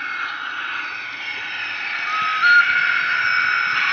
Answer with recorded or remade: recorded